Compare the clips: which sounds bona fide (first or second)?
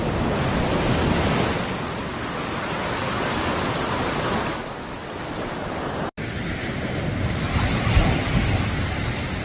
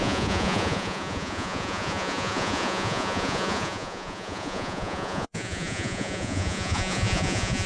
first